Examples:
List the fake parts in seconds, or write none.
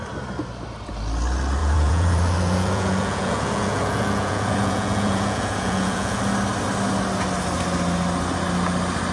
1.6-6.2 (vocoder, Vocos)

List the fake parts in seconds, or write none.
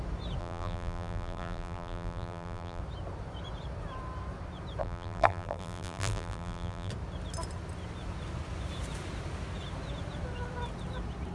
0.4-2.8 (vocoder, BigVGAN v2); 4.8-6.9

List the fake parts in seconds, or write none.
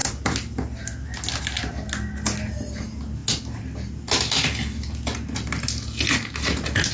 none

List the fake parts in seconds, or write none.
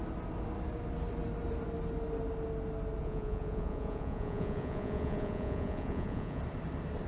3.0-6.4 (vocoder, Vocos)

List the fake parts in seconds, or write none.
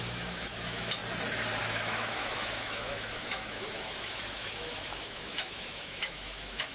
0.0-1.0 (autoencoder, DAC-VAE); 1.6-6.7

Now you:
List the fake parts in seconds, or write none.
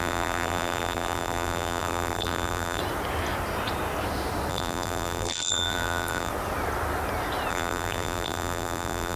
0.0-2.8 (vocoder, BigVGAN v2); 4.5-6.3; 7.5-9.2